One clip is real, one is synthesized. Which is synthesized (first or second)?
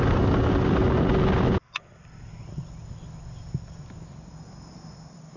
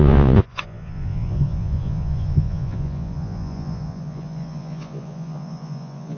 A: second